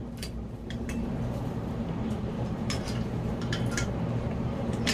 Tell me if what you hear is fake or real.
fake